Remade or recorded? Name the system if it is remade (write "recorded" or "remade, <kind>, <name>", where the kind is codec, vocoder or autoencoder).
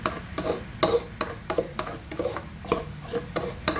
recorded